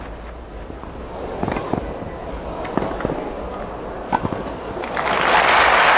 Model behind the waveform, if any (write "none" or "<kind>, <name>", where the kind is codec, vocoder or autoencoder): none